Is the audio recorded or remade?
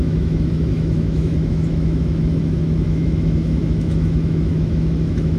remade